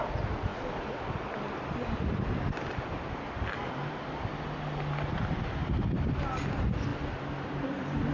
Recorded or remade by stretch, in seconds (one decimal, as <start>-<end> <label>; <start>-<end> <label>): 0.0-8.1 recorded